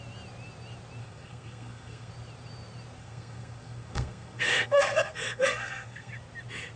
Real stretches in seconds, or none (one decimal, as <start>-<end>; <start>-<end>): 0.0-1.0; 2.1-3.0; 6.1-6.8

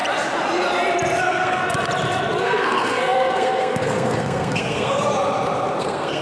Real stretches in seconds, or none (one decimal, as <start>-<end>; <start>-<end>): 0.0-1.2; 1.6-2.4; 5.1-5.8

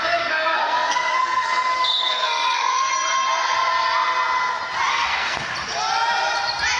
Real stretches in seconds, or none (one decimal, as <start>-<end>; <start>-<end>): 2.9-4.9; 5.5-6.8

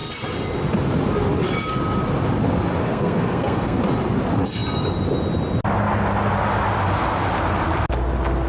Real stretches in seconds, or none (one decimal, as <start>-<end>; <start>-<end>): 0.0-2.8; 3.8-8.5

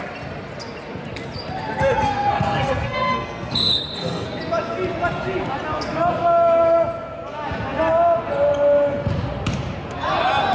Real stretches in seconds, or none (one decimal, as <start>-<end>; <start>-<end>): 0.0-1.8; 4.4-10.5

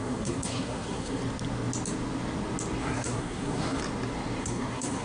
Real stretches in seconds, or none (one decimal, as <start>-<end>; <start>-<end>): 1.2-2.8; 3.8-4.4

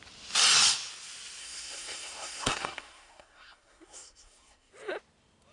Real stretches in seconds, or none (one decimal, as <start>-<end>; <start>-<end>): 0.0-1.4; 4.7-5.5

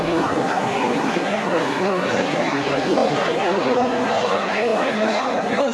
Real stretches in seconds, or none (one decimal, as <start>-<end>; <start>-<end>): none